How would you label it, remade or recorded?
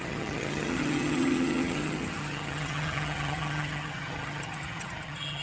remade